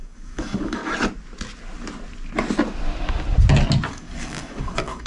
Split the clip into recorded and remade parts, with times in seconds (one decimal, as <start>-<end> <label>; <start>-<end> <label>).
0.0-0.8 remade; 0.8-3.9 recorded; 3.9-5.1 remade